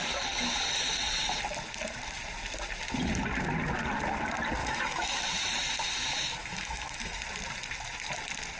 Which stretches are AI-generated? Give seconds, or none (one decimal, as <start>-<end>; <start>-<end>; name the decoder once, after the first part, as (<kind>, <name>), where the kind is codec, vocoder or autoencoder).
4.6-5.2 (autoencoder, DAC-VAE); 6.4-7.2